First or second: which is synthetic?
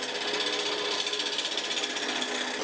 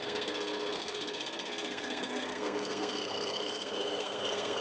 second